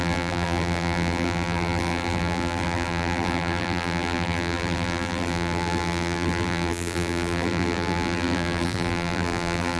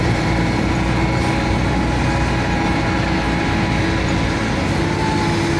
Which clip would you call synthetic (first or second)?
first